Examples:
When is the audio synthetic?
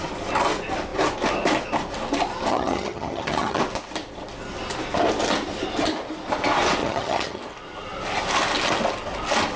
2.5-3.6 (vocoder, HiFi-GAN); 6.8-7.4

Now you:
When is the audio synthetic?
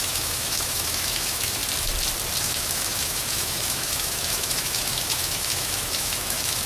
0.0-1.6 (autoencoder, DAC-VAE); 2.4-6.7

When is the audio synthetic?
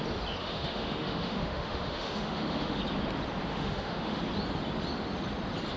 0.4-2.8 (autoencoder, DAC-VAE); 3.5-4.2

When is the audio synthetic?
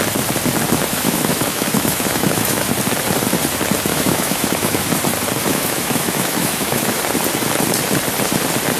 0.9-2.6 (autoencoder, DAC-VAE); 3.9-4.8; 5.5-7.0